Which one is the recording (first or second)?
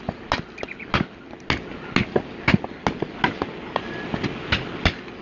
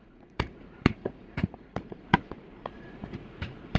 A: first